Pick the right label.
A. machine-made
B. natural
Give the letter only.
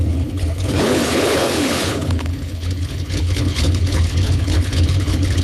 A